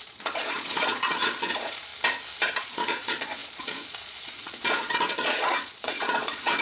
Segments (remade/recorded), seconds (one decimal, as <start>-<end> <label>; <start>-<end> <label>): 0.0-1.9 remade; 1.9-2.6 recorded; 2.6-6.6 remade